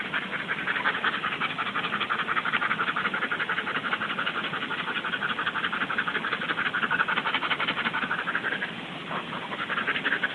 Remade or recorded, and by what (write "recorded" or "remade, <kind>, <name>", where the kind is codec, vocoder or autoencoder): recorded